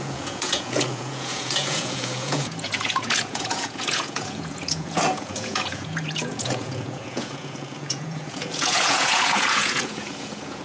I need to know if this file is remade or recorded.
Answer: remade